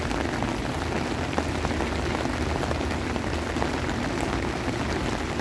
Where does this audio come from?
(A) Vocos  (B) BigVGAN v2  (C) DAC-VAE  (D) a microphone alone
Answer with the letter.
D